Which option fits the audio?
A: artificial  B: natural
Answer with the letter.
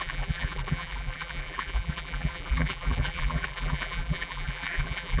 A